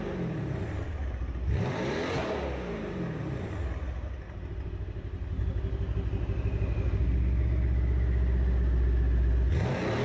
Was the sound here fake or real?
real